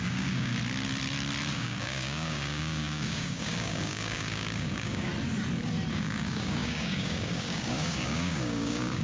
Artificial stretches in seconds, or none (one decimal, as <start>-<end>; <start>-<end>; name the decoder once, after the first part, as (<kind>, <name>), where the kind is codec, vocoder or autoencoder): 0.0-0.5 (codec, DAC); 1.5-5.1; 5.9-9.0